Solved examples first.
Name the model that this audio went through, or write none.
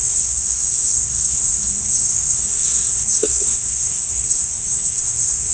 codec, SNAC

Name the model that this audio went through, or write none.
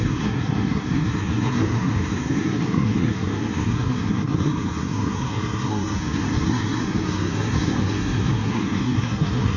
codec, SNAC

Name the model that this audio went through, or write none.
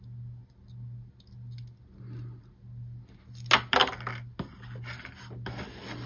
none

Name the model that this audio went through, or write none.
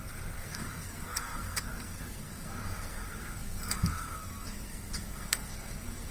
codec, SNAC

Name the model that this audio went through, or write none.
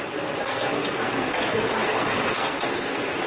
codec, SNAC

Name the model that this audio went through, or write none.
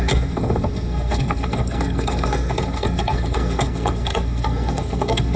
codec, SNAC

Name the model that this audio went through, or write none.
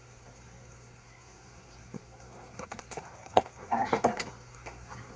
codec, SNAC